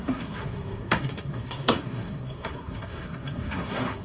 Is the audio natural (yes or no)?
no